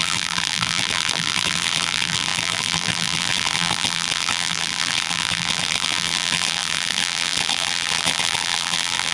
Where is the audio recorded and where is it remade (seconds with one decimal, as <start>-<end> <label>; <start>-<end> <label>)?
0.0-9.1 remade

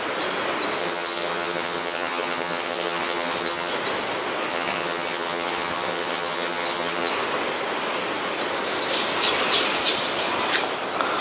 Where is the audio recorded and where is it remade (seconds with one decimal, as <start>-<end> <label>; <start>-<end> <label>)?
0.0-0.8 recorded; 0.8-3.7 remade; 3.7-4.5 recorded; 4.5-7.1 remade; 7.1-11.2 recorded

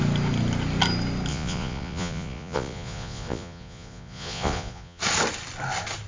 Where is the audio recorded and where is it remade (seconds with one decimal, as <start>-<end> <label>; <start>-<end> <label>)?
0.0-1.3 recorded; 1.3-5.0 remade; 5.0-6.1 recorded

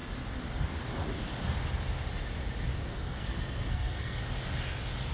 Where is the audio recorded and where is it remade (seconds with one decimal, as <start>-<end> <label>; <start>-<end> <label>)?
0.0-2.8 recorded; 2.8-4.2 remade; 4.2-5.1 recorded

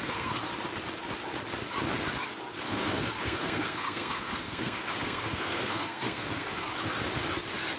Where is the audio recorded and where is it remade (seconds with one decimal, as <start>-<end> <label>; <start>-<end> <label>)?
0.0-0.5 remade; 0.5-2.6 recorded; 2.6-6.7 remade; 6.7-7.8 recorded